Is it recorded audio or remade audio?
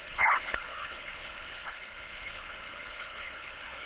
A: remade